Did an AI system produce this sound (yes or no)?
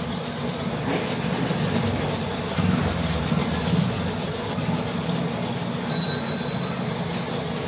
no